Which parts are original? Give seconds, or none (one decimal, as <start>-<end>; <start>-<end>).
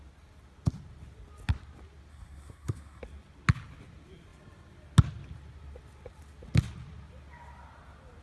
0.0-2.1; 3.0-8.2